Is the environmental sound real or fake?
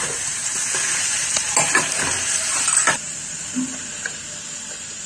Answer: real